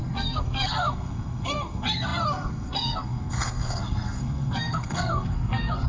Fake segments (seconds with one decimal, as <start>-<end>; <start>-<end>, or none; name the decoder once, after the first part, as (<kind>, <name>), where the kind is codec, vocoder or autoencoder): 0.0-5.9 (codec, SNAC)